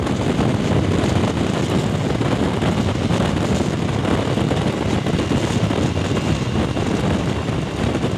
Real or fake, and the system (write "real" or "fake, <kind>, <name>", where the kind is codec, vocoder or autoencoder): real